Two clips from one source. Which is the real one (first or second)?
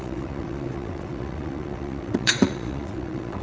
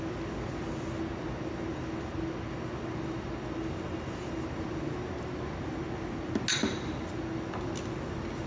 second